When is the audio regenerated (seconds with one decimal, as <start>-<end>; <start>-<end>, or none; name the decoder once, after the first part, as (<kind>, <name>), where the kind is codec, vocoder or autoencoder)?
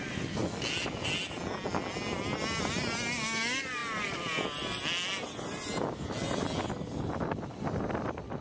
none